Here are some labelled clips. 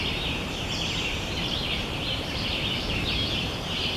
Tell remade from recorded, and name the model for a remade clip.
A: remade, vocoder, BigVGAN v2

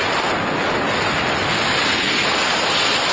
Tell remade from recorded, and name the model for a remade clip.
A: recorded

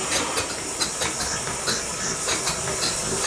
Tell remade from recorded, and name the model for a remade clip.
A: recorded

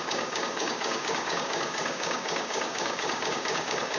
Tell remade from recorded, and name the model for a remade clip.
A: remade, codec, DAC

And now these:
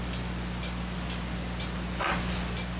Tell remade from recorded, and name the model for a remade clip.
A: recorded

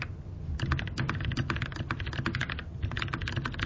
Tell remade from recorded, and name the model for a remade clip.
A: recorded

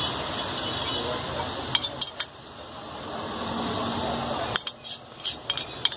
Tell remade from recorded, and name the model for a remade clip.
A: recorded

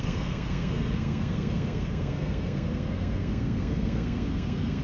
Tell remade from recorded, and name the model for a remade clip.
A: remade, codec, SNAC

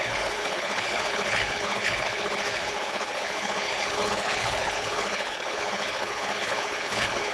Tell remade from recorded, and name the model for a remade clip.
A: remade, codec, HILCodec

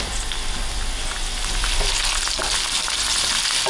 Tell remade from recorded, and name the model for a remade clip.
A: remade, vocoder, BigVGAN v2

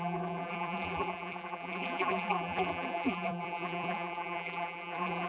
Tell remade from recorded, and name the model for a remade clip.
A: remade, vocoder, BigVGAN v2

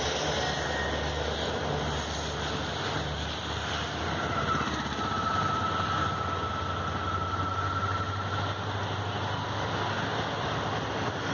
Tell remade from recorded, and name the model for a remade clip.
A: recorded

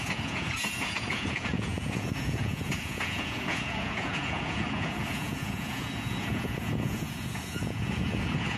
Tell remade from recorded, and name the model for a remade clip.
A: remade, vocoder, Vocos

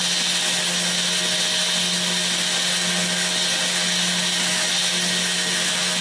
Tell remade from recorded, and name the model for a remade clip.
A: recorded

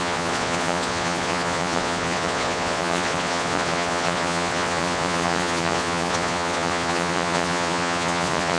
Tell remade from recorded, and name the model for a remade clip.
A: remade, vocoder, Vocos